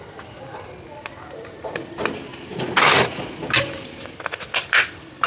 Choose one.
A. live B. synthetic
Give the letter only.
A